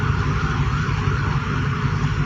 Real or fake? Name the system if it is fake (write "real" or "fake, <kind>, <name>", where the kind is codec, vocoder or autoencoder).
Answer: real